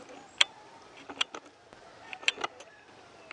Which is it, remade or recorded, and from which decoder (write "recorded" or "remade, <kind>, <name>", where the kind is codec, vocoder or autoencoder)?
recorded